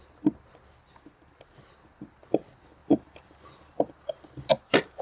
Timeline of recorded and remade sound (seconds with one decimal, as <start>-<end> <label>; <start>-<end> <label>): 0.0-5.0 recorded